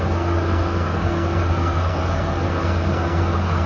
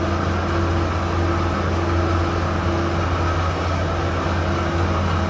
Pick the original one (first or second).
second